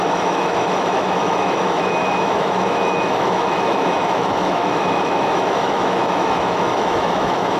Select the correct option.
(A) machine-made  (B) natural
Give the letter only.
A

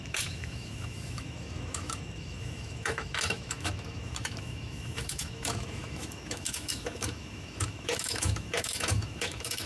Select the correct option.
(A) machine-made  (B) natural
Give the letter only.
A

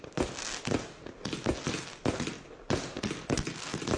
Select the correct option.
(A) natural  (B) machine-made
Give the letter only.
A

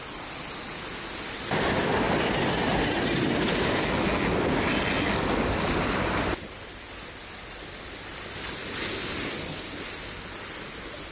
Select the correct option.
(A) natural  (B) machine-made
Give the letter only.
A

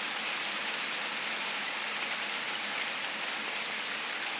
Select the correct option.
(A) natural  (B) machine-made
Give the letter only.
A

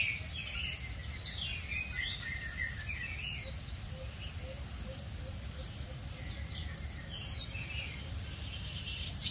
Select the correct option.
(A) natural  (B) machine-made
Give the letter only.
A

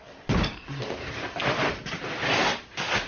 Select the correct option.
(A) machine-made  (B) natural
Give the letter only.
B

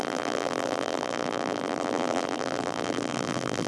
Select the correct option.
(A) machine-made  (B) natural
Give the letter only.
A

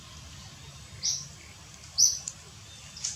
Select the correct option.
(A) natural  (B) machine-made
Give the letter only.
A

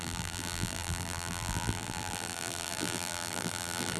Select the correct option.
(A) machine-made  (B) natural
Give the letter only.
A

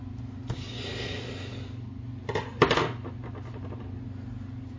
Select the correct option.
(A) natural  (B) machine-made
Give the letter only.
A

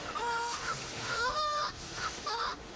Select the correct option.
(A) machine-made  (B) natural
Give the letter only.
A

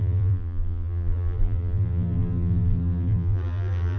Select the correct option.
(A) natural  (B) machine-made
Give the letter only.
B